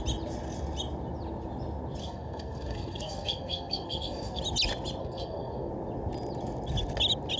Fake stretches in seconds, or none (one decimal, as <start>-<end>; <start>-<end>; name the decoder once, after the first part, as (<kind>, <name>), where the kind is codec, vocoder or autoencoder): 2.0-4.4 (codec, SNAC); 5.0-5.7